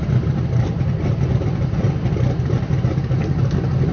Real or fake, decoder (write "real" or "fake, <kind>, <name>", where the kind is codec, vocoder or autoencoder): real